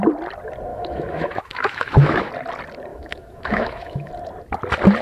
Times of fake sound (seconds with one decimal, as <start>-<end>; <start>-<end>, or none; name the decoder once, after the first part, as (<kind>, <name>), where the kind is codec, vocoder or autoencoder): 0.7-2.3 (autoencoder, DAC-VAE); 2.9-4.1